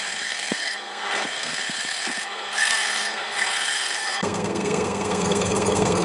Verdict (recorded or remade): remade